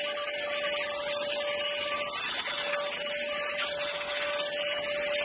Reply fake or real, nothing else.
real